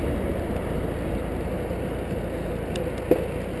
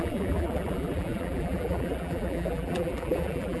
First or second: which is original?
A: first